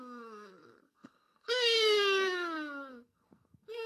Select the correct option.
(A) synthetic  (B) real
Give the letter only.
A